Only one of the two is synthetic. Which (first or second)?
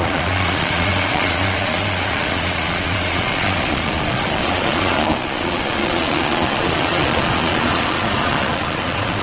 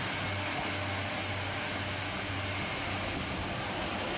first